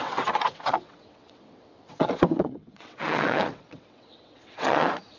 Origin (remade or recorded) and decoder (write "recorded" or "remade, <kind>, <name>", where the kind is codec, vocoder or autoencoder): remade, vocoder, WaveNeXt